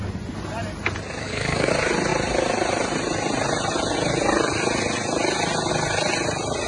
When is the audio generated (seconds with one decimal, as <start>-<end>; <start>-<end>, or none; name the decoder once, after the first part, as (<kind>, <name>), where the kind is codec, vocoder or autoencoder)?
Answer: 1.2-1.7 (codec, SNAC)